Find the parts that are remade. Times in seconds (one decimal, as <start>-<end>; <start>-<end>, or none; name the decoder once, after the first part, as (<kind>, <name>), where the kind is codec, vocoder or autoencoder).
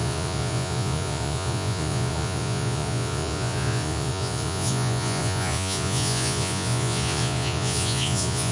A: 0.0-8.5 (vocoder, Vocos)